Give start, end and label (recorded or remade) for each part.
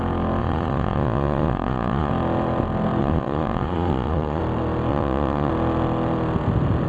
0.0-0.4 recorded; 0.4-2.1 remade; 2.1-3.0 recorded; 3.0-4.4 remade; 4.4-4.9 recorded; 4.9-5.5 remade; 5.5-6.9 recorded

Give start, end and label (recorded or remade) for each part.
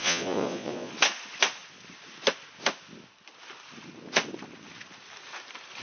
0.0-0.9 remade; 0.9-5.8 recorded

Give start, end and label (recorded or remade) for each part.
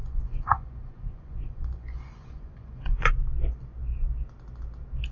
0.0-3.1 remade; 3.1-5.1 recorded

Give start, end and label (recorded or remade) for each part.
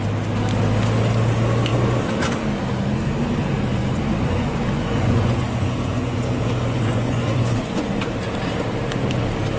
0.0-3.8 recorded; 3.8-8.0 remade; 8.0-9.6 recorded